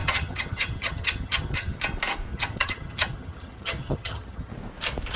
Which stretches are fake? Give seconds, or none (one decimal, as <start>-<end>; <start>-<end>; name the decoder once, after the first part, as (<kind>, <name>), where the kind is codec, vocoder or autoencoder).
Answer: 0.0-1.8 (vocoder, HiFi-GAN); 2.3-4.5